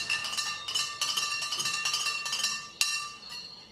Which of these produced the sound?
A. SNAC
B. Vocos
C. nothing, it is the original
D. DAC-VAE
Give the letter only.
C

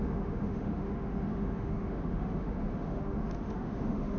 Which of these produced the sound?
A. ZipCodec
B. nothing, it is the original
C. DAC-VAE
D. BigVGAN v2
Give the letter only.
C